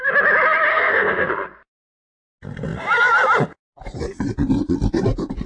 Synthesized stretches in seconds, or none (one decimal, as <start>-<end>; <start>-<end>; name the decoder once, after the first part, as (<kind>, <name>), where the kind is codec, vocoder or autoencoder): 0.7-1.3 (codec, SNAC)